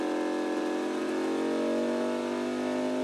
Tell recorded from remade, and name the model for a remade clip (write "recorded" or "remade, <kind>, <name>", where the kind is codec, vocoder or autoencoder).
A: recorded